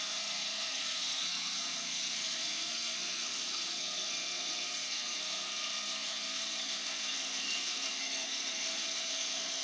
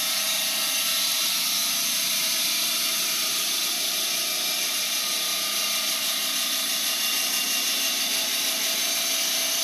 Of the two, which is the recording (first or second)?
second